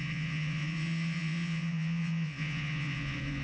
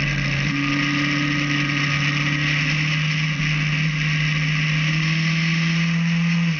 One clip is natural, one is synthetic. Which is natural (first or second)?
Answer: second